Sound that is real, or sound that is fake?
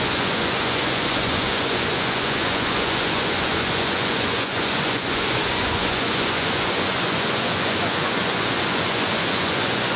fake